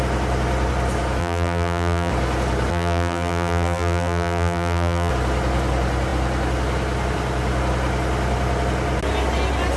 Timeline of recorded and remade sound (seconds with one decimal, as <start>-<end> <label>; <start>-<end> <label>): 0.0-1.2 recorded; 1.2-2.1 remade; 2.1-2.7 recorded; 2.7-5.1 remade; 5.1-9.8 recorded